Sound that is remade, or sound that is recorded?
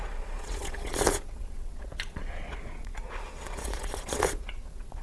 remade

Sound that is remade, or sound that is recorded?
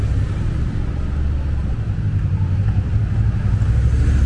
recorded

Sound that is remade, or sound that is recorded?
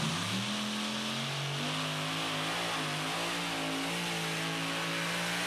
recorded